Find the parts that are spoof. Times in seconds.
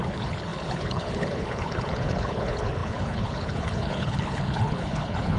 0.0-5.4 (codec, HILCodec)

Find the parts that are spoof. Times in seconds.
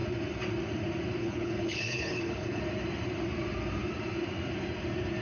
1.2-2.6 (codec, HILCodec)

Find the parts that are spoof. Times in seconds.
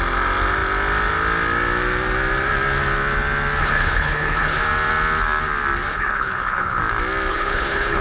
3.6-4.6 (codec, HILCodec); 5.9-6.8; 7.3-8.0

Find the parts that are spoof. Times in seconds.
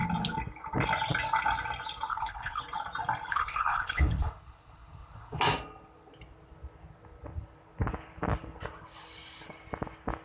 2.1-2.6 (codec, HILCodec); 3.3-5.4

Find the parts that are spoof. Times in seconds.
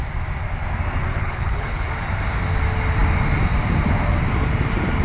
1.1-1.9 (codec, HILCodec)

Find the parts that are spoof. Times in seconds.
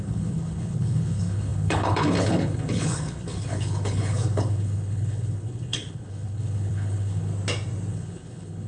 0.0-7.3 (codec, HILCodec); 7.9-8.7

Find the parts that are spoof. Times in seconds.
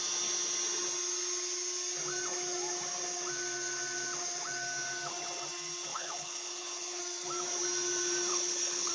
5.9-7.0 (codec, HILCodec); 8.3-8.9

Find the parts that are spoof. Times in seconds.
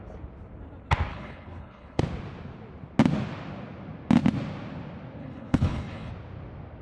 1.1-2.0 (codec, HILCodec); 5.2-6.1